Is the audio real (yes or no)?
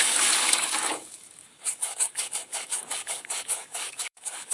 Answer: no